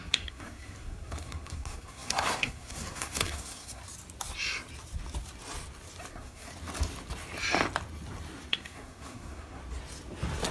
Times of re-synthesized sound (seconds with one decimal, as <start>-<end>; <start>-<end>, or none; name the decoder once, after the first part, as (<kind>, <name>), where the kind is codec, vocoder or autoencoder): 0.0-3.8 (codec, SNAC); 6.1-6.5; 8.5-9.6